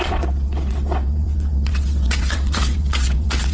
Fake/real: fake